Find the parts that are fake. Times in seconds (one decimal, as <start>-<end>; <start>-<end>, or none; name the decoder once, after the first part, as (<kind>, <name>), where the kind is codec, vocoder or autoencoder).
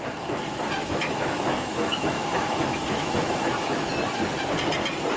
0.8-3.9 (autoencoder, DAC-VAE)